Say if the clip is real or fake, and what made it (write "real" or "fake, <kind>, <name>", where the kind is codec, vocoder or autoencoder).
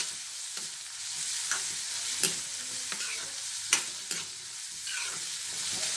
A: real